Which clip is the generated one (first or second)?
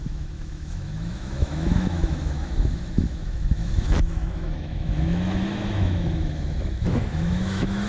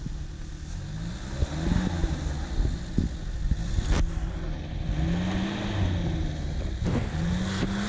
first